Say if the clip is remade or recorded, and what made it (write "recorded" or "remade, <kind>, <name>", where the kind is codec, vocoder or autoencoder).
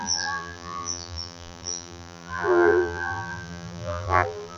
remade, vocoder, BigVGAN v2